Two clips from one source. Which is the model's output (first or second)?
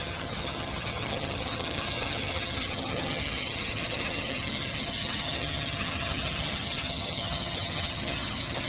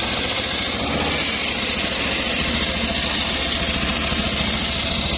first